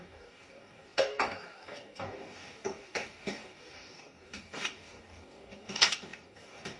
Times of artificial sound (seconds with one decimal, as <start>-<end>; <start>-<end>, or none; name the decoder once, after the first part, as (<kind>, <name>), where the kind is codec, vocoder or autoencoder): 0.0-6.8 (codec, DAC)